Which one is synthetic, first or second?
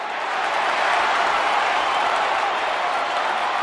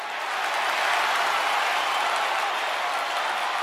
first